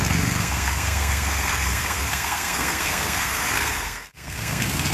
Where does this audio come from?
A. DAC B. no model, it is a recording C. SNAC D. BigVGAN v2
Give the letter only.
C